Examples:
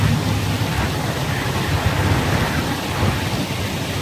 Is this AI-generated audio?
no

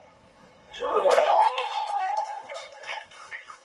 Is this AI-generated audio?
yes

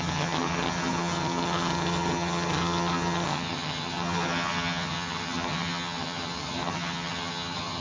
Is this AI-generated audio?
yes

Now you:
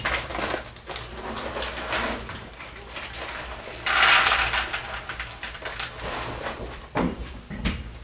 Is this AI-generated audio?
no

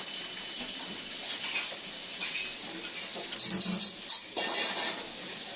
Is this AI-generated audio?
no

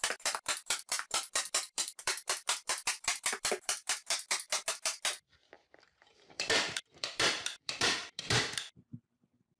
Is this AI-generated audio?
yes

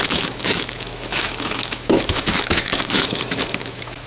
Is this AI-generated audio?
yes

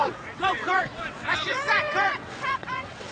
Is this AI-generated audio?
yes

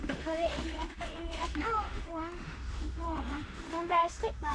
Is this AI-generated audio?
yes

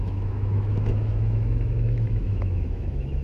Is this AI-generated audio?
yes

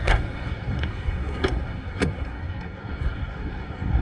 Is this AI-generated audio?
yes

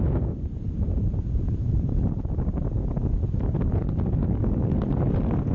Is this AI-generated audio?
no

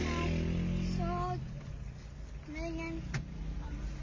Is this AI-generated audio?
no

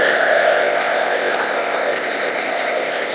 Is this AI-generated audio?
yes